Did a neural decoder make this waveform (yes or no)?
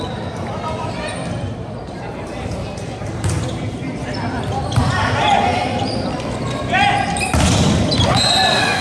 yes